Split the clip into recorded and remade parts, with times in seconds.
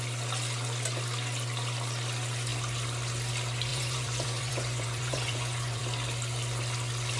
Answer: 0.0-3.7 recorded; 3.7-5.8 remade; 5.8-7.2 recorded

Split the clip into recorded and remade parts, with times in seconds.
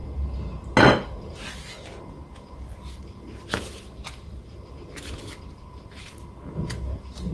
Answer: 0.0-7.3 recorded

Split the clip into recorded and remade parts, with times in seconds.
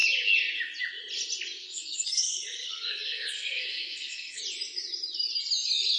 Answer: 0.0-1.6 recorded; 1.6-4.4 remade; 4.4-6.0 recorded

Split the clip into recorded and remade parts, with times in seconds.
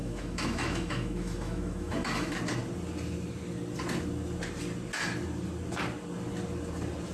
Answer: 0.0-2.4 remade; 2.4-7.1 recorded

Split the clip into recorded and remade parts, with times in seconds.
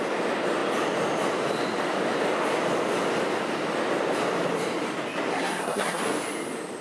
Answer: 0.0-5.3 recorded; 5.3-6.0 remade; 6.0-6.8 recorded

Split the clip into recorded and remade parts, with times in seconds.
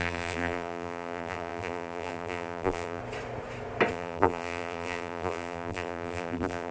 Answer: 0.0-3.0 remade; 3.0-3.9 recorded; 3.9-6.7 remade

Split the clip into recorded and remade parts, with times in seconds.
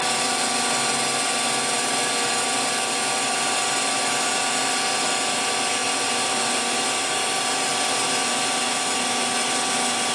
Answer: 0.0-10.1 recorded